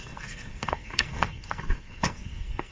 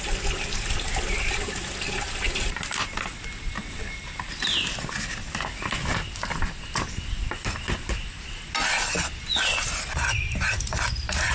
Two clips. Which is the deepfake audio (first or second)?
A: first